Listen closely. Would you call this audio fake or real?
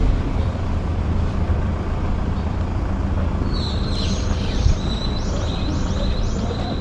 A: fake